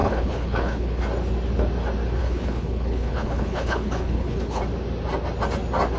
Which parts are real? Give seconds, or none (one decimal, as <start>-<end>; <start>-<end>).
1.0-2.2; 4.6-6.0